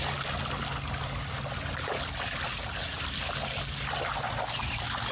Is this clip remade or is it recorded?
recorded